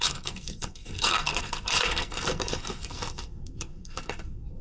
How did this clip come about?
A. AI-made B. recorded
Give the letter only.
A